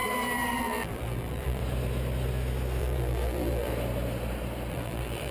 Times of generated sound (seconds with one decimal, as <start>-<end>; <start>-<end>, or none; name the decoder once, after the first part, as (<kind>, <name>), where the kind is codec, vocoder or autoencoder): 0.6-1.6 (vocoder, BigVGAN v2); 2.8-3.7; 4.7-5.3

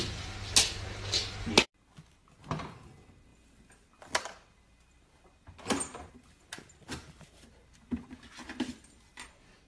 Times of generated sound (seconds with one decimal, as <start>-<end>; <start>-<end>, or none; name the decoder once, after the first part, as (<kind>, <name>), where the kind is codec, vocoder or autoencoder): 3.3-6.1 (vocoder, BigVGAN v2)

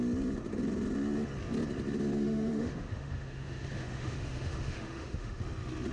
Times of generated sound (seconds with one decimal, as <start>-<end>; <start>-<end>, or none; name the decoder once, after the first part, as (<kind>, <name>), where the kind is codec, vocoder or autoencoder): 2.2-5.4 (autoencoder, DAC-VAE)